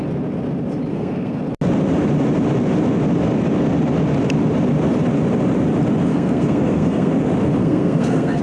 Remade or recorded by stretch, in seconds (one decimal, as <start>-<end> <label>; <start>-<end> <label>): 0.0-0.9 recorded; 0.9-1.4 remade; 1.4-6.1 recorded; 6.1-7.1 remade; 7.1-7.6 recorded; 7.6-8.4 remade